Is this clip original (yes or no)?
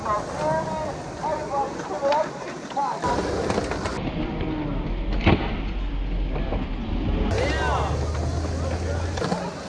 yes